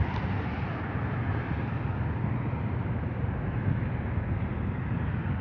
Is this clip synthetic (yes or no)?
no